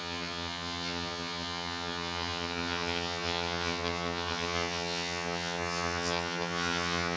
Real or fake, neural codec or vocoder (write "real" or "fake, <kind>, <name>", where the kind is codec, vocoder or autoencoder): fake, vocoder, HiFi-GAN